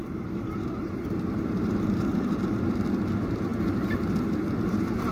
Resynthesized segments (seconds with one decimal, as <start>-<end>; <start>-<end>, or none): 0.0-2.4